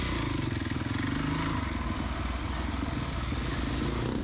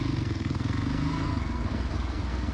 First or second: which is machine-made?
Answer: second